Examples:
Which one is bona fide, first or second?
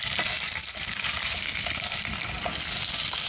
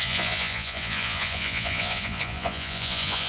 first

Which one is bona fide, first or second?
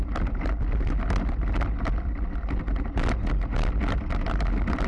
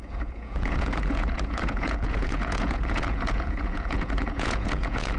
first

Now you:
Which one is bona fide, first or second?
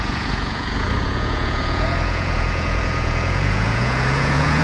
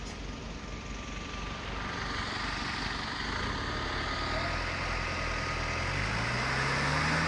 second